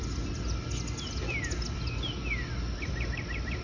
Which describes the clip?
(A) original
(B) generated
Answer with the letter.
A